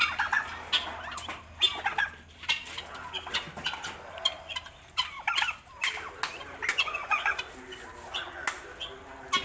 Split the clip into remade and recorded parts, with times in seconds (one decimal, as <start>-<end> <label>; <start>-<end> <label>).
0.0-6.7 recorded; 6.7-7.4 remade; 7.4-9.4 recorded